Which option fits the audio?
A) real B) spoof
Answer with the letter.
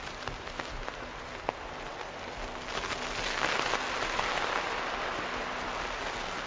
A